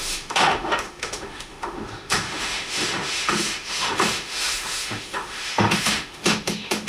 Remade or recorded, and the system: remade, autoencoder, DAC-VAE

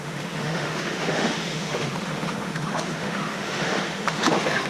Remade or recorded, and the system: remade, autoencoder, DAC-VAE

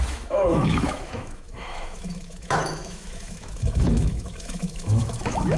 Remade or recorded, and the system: remade, autoencoder, DAC-VAE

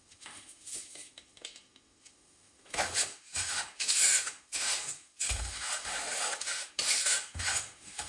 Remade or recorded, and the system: remade, autoencoder, DAC-VAE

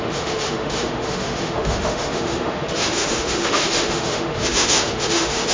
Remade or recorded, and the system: remade, autoencoder, DAC-VAE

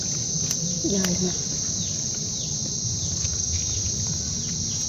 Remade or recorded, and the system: recorded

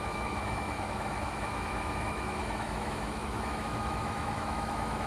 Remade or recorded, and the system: remade, autoencoder, DAC-VAE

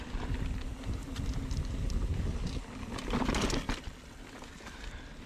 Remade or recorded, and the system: recorded